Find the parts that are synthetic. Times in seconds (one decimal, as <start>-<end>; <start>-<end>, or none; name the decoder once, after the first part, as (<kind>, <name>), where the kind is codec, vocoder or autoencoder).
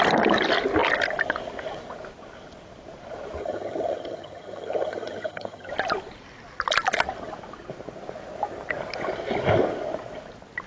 3.4-5.7 (vocoder, HiFi-GAN)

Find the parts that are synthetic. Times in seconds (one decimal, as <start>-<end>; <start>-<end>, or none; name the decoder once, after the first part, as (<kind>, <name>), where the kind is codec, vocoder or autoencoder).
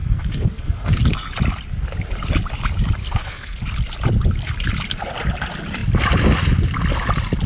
0.0-1.0 (codec, SNAC); 3.0-3.6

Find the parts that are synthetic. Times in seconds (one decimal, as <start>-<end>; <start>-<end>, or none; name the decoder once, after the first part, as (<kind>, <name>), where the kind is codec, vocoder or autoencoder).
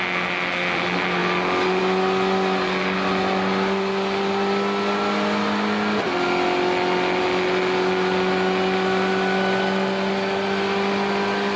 none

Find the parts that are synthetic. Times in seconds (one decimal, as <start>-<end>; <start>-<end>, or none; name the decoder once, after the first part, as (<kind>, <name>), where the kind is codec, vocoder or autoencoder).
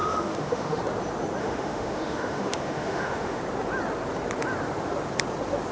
0.0-0.8 (autoencoder, DAC-VAE); 1.4-3.4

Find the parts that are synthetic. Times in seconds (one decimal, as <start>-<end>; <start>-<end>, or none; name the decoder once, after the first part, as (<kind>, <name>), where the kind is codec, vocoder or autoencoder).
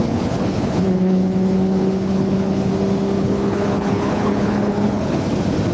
0.0-2.7 (codec, HILCodec); 3.2-5.3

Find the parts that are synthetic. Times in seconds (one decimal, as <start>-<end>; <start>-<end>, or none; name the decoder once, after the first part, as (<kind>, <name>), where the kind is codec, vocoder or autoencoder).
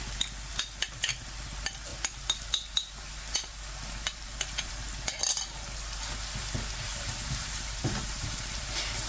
6.9-8.6 (vocoder, BigVGAN v2)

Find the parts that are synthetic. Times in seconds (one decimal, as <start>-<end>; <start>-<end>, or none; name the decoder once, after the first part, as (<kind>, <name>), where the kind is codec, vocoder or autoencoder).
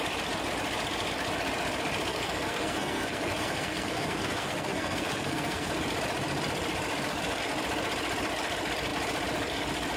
2.1-5.7 (codec, SNAC)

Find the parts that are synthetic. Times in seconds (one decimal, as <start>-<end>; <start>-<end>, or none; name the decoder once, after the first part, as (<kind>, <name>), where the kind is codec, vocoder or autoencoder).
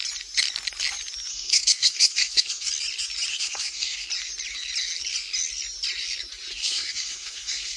1.3-2.7 (codec, SNAC); 3.3-4.1; 6.5-7.8